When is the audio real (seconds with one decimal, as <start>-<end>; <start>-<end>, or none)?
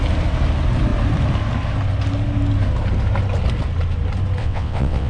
0.0-4.4